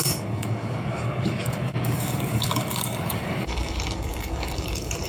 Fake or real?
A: fake